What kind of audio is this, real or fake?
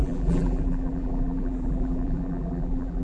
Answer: fake